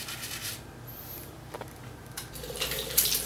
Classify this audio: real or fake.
fake